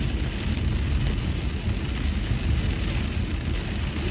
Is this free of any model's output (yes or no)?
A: yes